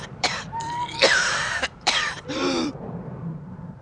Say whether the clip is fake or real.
fake